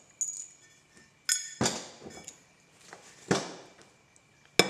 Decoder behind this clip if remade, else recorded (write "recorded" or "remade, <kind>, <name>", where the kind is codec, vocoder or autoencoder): recorded